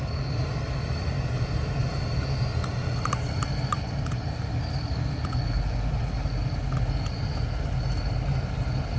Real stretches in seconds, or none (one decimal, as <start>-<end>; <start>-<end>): 0.0-9.0